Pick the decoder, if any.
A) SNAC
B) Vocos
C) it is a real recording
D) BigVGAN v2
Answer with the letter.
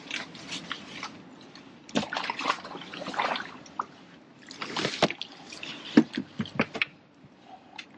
C